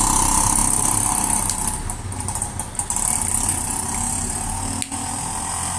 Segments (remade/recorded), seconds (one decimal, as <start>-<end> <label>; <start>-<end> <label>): 0.0-5.8 recorded